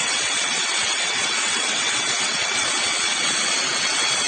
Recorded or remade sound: remade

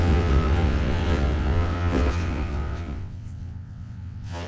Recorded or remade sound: remade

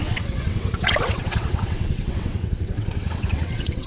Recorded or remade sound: remade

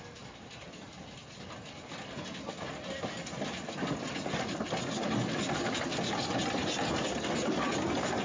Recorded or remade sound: recorded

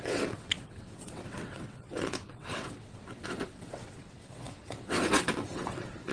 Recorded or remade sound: remade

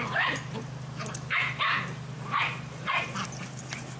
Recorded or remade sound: recorded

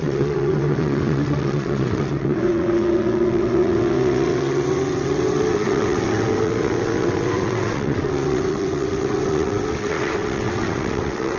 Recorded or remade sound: remade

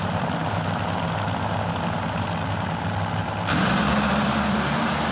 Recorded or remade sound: recorded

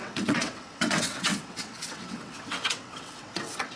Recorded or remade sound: remade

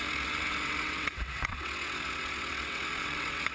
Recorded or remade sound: remade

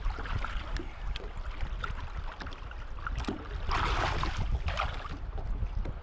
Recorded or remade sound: recorded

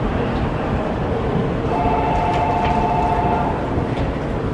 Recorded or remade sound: recorded